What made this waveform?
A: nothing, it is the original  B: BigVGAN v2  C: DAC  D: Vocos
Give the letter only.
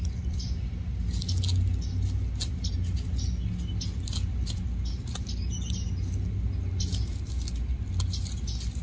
A